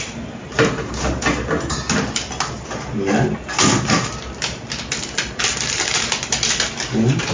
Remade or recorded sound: recorded